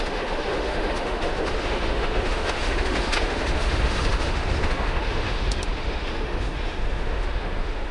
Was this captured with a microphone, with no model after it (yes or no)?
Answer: no